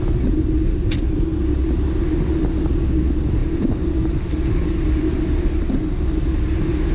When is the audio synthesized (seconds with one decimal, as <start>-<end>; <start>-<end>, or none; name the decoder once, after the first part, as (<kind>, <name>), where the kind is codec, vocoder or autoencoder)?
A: none